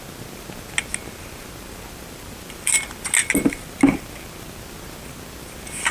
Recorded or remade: recorded